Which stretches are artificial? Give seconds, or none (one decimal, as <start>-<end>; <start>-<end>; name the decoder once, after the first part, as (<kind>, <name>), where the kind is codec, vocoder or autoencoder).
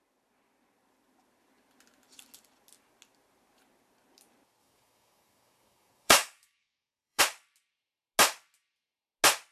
4.6-7.2 (codec, DAC)